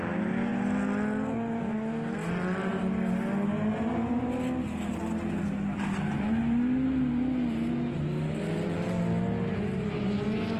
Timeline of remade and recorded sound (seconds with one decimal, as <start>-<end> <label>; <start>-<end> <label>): 0.0-10.6 recorded